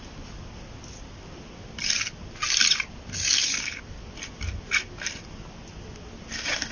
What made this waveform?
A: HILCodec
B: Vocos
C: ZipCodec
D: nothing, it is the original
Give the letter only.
D